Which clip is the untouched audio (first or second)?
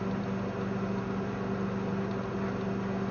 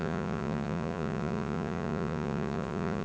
first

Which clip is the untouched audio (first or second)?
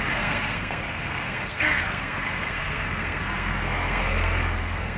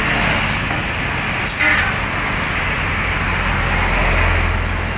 second